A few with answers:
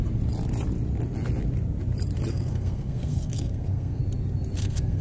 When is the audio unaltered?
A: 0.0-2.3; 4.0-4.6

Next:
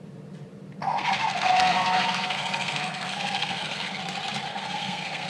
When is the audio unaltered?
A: 0.0-0.8; 4.0-4.5

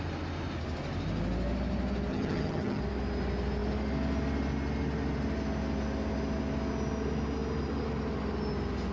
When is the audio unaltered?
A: 0.0-2.1; 2.8-8.9